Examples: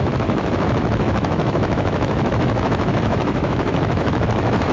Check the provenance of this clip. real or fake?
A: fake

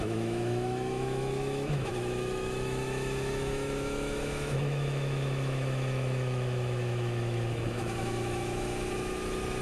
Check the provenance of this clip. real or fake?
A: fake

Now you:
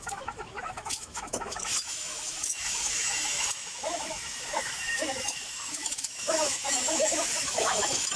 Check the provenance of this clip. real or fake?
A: fake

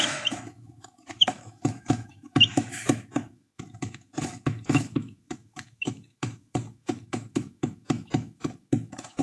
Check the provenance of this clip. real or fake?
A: fake